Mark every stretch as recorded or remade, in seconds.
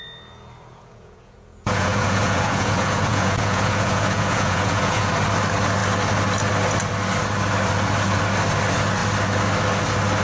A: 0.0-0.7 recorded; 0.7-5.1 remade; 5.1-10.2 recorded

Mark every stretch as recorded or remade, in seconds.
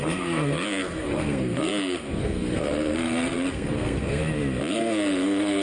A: 0.0-4.2 remade; 4.2-4.7 recorded; 4.7-5.6 remade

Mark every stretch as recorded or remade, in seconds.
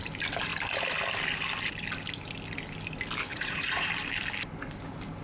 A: 0.0-3.3 recorded; 3.3-3.9 remade; 3.9-5.2 recorded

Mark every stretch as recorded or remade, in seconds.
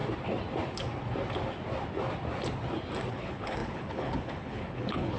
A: 0.0-3.1 recorded; 3.1-5.2 remade